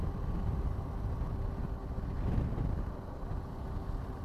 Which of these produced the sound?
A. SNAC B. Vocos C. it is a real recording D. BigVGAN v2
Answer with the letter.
C